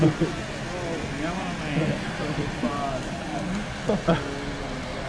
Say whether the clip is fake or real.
real